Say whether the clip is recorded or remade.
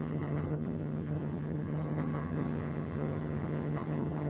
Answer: remade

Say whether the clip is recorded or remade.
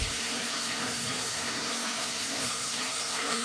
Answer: remade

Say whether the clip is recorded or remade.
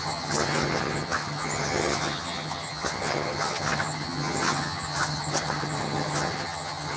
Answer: remade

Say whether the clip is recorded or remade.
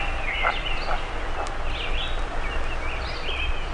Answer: recorded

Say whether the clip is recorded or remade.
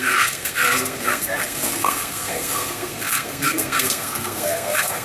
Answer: remade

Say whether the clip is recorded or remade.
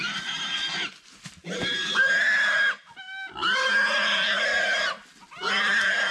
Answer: recorded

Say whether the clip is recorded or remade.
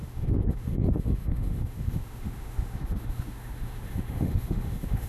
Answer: remade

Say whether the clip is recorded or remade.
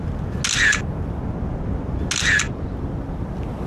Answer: recorded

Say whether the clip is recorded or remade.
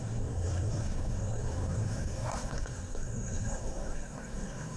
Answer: remade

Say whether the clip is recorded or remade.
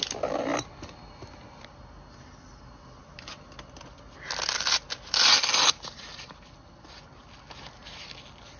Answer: recorded